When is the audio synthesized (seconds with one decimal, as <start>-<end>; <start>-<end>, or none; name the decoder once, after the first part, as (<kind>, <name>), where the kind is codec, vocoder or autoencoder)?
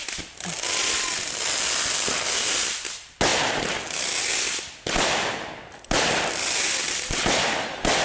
none